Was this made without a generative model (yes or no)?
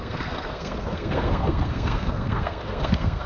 no